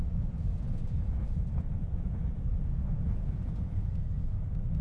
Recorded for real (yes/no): no